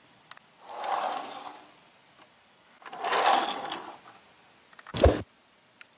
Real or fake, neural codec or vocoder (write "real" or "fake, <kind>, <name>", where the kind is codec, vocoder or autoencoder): real